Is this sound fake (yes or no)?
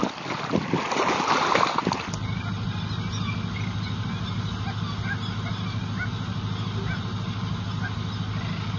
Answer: no